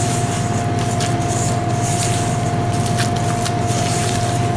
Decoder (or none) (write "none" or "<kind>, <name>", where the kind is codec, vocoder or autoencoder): none